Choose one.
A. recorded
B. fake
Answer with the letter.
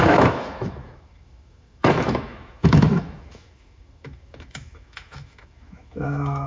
B